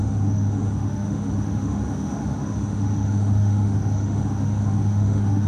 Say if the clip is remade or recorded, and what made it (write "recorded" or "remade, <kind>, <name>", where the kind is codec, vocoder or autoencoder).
remade, autoencoder, DAC-VAE